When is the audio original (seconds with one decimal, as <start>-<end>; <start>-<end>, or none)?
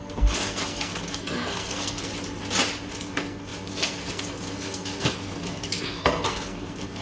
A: 2.1-2.9